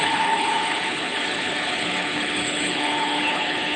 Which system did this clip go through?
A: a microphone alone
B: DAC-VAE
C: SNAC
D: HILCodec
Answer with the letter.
D